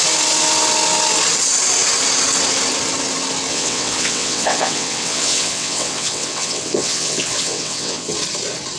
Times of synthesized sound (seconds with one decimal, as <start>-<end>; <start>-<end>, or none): 3.5-8.1